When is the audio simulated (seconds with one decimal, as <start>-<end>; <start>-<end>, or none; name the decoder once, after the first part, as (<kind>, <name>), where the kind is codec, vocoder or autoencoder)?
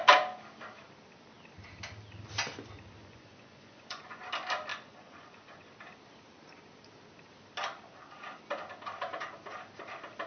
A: 3.0-4.2 (vocoder, Vocos); 4.7-5.7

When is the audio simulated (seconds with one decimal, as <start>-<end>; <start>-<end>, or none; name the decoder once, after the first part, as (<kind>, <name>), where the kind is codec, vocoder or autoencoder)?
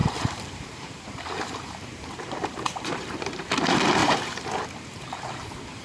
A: 0.0-3.5 (vocoder, BigVGAN v2); 4.0-4.5